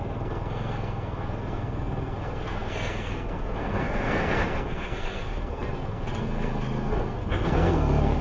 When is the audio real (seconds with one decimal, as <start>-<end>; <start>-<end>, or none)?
none